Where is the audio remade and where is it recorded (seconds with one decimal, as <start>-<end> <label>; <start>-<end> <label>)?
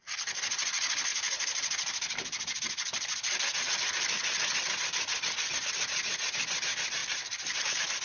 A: 0.0-7.0 recorded; 7.0-7.6 remade; 7.6-8.0 recorded